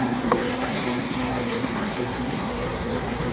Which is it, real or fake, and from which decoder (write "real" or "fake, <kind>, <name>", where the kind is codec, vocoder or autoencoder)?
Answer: fake, codec, SNAC